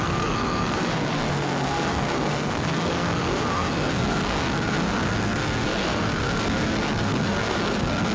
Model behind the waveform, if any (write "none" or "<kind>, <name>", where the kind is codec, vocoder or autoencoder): codec, SNAC